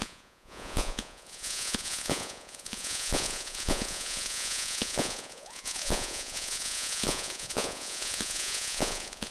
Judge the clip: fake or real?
fake